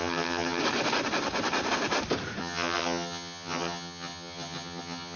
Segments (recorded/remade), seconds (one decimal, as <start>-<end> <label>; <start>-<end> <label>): 0.0-0.6 remade; 0.6-2.4 recorded; 2.4-5.2 remade